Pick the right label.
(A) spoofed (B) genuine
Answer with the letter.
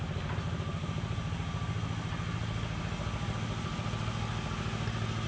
B